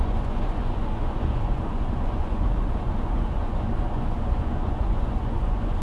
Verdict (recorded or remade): remade